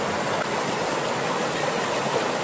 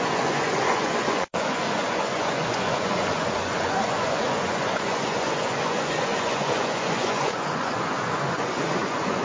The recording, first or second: first